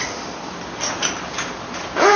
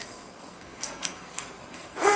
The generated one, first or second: second